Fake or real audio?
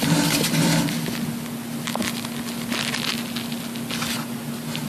real